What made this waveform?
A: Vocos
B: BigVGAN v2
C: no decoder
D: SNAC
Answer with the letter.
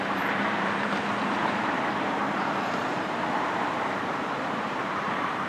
B